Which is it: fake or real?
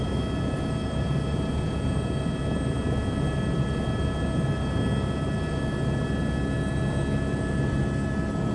real